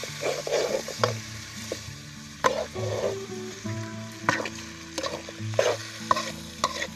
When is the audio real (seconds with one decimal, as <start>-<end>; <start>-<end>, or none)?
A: 4.2-7.0